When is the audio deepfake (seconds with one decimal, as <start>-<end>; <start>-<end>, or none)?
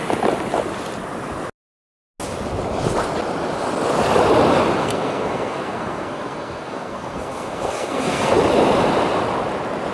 4.8-8.3